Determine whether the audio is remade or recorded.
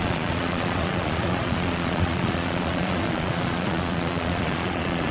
remade